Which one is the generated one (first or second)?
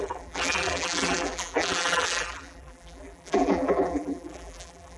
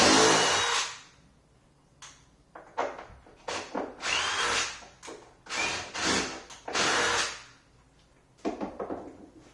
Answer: first